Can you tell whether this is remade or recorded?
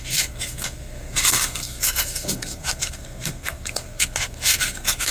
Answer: remade